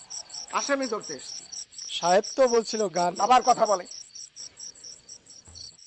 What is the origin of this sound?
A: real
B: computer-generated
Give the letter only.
B